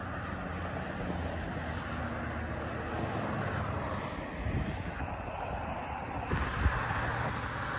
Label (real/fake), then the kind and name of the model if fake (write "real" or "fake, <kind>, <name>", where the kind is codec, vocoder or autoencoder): real